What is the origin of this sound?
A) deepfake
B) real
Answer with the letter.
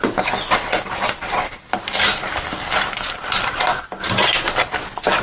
B